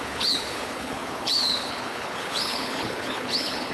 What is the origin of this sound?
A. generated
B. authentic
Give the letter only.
A